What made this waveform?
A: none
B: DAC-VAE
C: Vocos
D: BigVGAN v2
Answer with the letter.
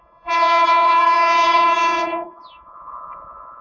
C